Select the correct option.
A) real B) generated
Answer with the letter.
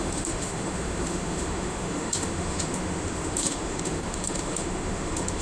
B